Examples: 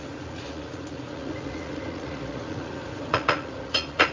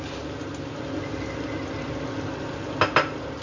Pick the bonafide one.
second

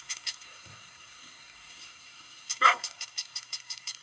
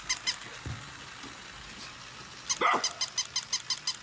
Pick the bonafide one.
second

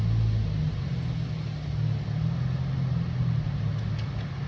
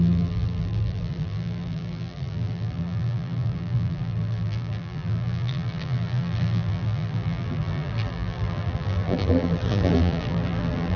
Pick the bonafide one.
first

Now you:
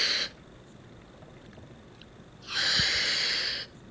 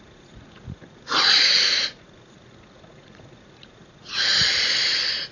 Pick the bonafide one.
first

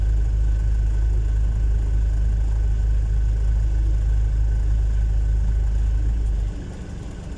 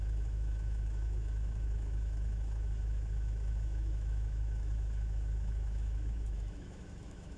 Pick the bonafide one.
first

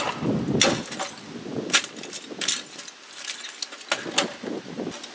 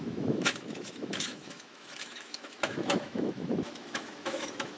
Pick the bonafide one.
first